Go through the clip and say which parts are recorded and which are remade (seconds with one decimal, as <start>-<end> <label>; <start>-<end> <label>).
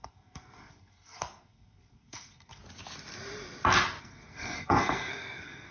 0.0-2.6 remade; 2.6-4.0 recorded; 4.0-5.7 remade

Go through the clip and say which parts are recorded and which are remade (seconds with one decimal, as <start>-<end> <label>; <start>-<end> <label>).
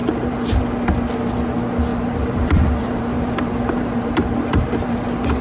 0.0-0.6 remade; 0.6-1.9 recorded; 1.9-5.4 remade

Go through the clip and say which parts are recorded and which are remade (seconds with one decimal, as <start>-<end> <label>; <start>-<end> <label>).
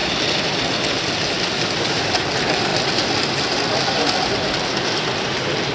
0.0-1.1 remade; 1.1-5.7 recorded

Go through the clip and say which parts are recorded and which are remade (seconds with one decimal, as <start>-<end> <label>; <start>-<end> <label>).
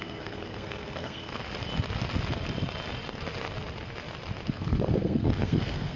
0.0-1.4 remade; 1.4-4.5 recorded; 4.5-6.0 remade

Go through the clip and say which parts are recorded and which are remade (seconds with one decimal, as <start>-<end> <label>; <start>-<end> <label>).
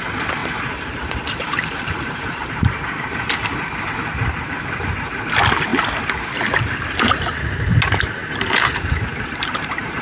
0.0-0.4 recorded; 0.4-3.5 remade; 3.5-8.2 recorded; 8.2-10.0 remade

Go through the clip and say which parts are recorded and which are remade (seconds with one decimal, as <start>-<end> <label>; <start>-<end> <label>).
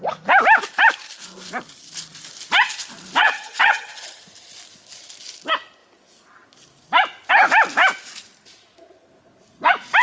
0.0-3.2 recorded; 3.2-4.2 remade; 4.2-10.0 recorded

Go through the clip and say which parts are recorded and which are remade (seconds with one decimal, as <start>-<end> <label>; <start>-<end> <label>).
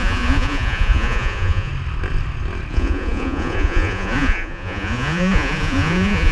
0.0-1.7 remade; 1.7-2.7 recorded; 2.7-6.3 remade